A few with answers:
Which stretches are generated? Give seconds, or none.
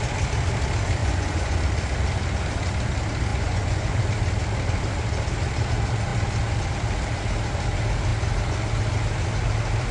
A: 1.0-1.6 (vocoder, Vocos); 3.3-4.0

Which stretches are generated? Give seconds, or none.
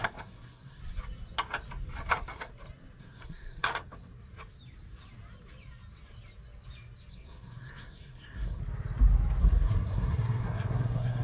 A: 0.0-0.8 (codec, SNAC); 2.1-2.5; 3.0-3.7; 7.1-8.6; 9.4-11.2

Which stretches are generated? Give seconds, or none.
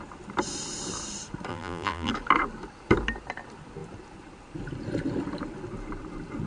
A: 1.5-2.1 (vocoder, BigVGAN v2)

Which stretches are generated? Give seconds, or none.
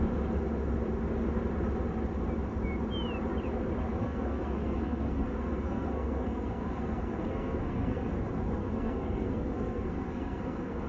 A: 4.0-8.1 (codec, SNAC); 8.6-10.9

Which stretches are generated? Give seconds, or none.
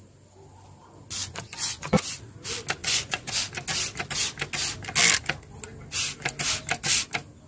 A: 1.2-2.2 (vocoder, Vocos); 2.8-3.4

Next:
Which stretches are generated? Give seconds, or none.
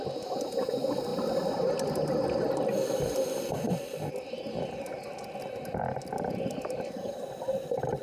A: 6.3-7.2 (vocoder, BigVGAN v2)